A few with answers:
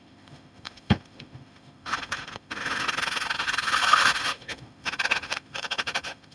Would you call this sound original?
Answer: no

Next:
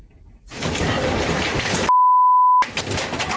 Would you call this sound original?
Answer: yes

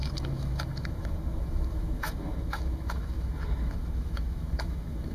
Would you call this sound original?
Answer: no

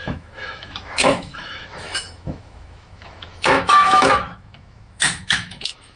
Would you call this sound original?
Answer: no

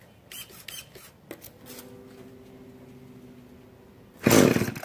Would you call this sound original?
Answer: yes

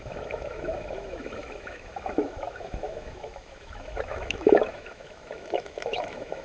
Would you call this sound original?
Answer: no